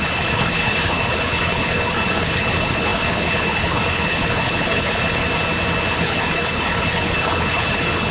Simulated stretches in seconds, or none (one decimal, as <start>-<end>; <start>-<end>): 0.0-5.2; 5.9-8.1